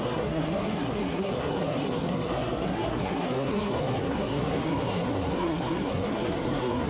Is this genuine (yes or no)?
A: no